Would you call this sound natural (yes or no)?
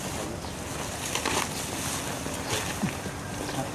yes